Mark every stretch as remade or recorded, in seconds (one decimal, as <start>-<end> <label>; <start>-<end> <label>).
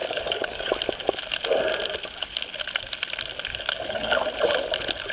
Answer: 0.0-0.7 remade; 0.7-3.5 recorded; 3.5-4.2 remade; 4.2-5.1 recorded